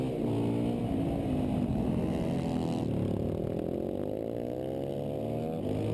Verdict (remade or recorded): recorded